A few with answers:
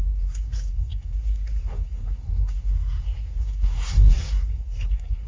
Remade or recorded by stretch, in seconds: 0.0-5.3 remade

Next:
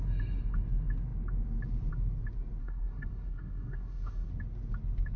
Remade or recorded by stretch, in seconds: 0.0-2.6 recorded; 2.6-4.3 remade; 4.3-5.2 recorded

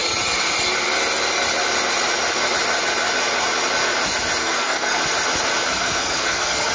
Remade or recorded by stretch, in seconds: 0.0-4.4 recorded; 4.4-5.0 remade; 5.0-5.7 recorded; 5.7-6.7 remade

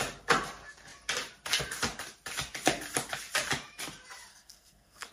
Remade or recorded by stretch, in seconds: 0.0-4.3 recorded; 4.3-5.1 remade

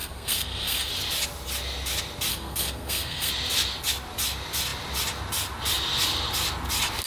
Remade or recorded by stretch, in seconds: 0.0-0.9 remade; 0.9-2.3 recorded; 2.3-3.3 remade; 3.3-7.1 recorded

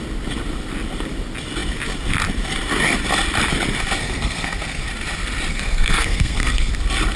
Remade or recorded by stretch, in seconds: 0.0-4.0 recorded; 4.0-4.9 remade; 4.9-5.5 recorded; 5.5-6.7 remade; 6.7-7.2 recorded